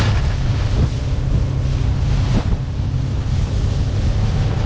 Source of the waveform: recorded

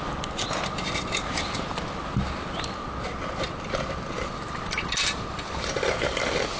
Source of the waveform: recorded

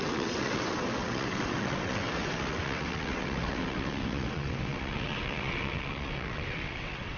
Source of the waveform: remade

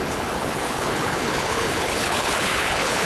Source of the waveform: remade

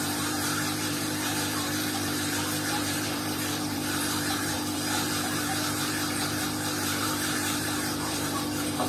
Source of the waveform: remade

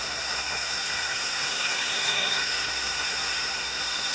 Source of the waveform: remade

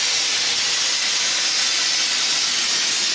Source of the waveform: recorded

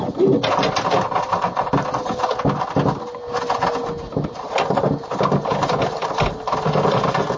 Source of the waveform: recorded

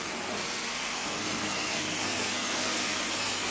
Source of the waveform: remade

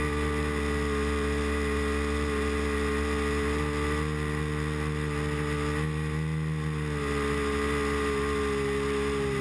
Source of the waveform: recorded